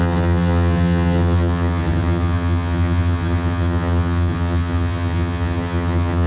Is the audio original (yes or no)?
no